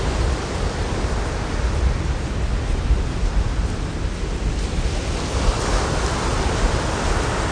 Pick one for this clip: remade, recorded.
recorded